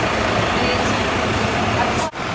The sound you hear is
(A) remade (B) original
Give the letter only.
B